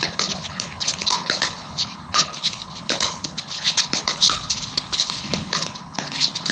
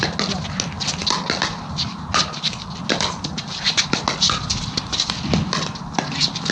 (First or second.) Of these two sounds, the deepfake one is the first